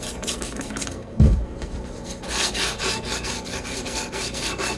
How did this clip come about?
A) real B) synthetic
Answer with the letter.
B